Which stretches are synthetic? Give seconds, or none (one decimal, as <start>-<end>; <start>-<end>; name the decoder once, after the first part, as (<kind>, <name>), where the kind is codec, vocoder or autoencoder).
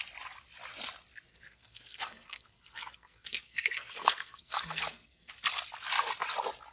1.3-5.3 (codec, SNAC)